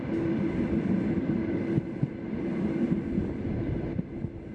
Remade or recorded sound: recorded